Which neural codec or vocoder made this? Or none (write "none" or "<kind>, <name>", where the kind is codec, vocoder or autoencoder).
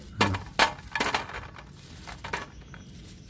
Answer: none